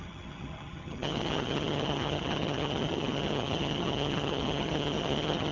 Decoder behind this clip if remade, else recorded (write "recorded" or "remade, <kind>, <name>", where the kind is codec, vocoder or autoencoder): remade, vocoder, HiFi-GAN